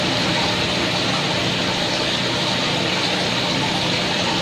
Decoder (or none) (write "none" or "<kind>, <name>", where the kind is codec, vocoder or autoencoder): none